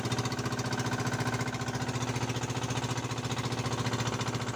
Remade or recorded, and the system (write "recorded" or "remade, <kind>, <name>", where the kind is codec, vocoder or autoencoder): recorded